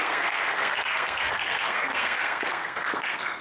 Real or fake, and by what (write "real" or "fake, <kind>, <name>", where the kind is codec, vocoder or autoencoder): fake, codec, SNAC